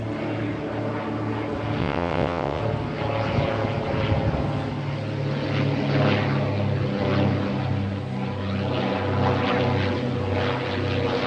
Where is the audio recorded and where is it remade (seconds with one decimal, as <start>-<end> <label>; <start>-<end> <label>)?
0.0-1.8 recorded; 1.8-2.6 remade; 2.6-11.3 recorded